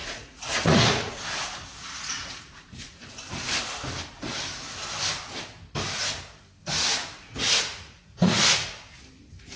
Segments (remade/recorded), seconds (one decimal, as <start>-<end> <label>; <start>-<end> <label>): 0.0-1.2 remade; 1.2-1.8 recorded; 1.8-3.2 remade; 3.2-7.0 recorded; 7.0-8.5 remade; 8.5-9.6 recorded